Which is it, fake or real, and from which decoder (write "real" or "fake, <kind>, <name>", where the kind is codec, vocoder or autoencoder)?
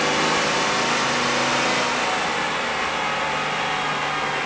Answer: real